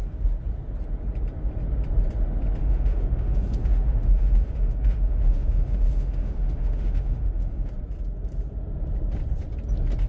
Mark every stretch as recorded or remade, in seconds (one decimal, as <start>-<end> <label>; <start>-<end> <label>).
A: 0.0-2.6 recorded; 2.6-7.7 remade; 7.7-10.1 recorded